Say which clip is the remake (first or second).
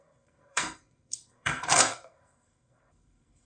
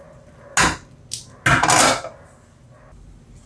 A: first